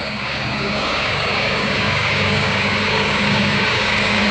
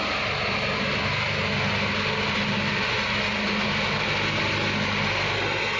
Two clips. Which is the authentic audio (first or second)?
second